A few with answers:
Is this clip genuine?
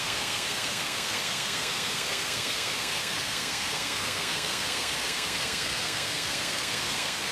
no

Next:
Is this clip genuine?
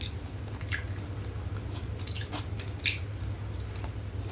yes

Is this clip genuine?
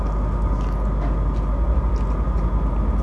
yes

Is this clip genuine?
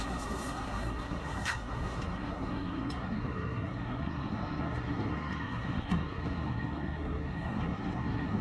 no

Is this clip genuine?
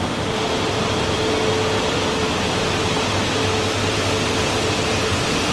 yes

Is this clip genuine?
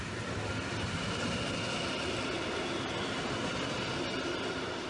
yes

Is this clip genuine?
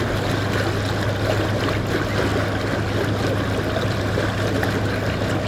yes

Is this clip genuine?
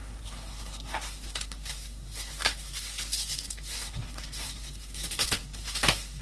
no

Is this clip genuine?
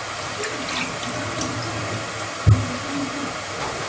yes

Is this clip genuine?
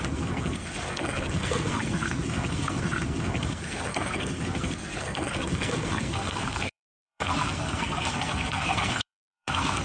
no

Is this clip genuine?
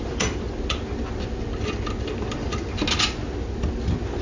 yes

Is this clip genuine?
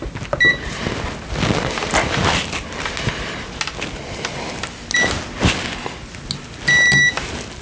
yes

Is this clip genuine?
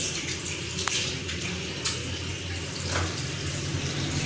yes